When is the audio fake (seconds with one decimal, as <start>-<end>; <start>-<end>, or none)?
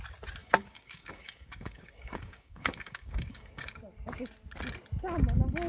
0.4-3.8